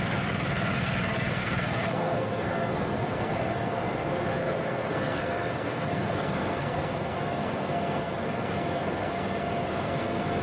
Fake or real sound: fake